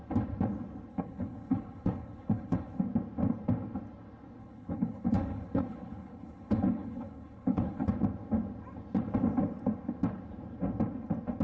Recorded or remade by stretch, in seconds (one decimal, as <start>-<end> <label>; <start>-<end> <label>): 0.0-0.9 recorded; 0.9-2.8 remade; 2.8-4.4 recorded; 4.4-7.9 remade; 7.9-11.4 recorded